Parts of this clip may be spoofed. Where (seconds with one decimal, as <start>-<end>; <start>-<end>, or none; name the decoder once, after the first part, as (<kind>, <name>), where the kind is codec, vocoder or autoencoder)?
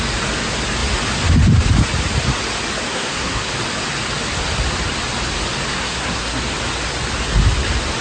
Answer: 2.9-3.5 (codec, SNAC); 5.7-6.4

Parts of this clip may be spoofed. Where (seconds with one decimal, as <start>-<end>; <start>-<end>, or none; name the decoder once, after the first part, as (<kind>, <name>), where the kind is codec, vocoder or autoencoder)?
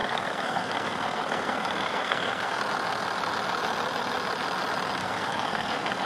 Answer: 0.0-2.6 (codec, SNAC); 5.0-6.1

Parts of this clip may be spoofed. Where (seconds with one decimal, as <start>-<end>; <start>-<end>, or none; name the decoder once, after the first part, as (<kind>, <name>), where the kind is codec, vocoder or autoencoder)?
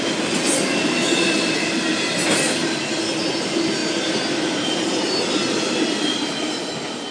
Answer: none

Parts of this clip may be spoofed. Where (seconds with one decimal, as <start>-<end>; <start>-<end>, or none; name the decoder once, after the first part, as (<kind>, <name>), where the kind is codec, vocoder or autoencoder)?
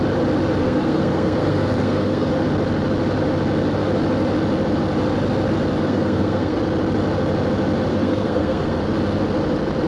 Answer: 0.6-2.3 (codec, SNAC); 5.8-6.6; 7.9-8.8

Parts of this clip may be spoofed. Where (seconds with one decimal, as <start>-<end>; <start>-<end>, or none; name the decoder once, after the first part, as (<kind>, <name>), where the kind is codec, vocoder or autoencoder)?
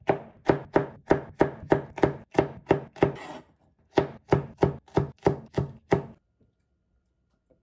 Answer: none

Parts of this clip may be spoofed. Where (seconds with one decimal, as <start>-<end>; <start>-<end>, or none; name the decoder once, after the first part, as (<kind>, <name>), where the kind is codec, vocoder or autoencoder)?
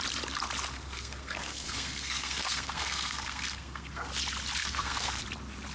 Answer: 0.7-4.1 (codec, SNAC); 4.6-5.2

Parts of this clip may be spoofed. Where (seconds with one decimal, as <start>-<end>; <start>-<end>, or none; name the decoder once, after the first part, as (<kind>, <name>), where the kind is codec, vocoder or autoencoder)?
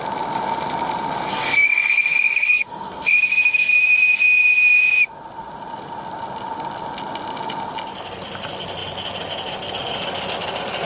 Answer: 1.3-3.8 (codec, SNAC)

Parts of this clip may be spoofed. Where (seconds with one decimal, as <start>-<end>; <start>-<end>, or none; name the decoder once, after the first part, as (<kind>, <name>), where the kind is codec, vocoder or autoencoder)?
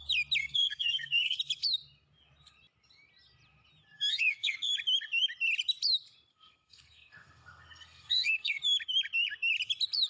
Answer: 0.4-1.4 (codec, SNAC); 4.1-4.7; 6.3-8.6